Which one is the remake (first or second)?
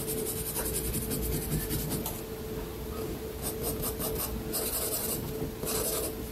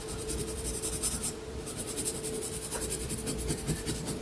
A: second